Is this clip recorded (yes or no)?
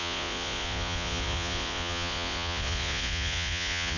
no